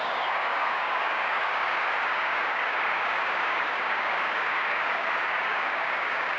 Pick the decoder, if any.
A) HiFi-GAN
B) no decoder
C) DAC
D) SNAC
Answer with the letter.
C